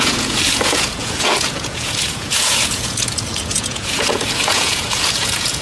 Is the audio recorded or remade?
remade